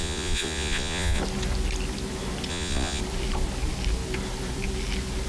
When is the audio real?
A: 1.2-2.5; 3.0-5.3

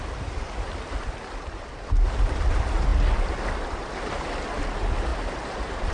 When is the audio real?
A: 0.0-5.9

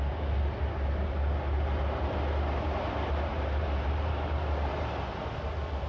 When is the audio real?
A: 0.0-3.3; 5.3-5.9

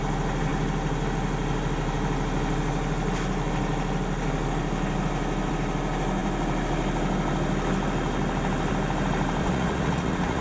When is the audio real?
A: 0.0-9.4